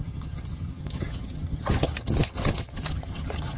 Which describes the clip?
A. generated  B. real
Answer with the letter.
A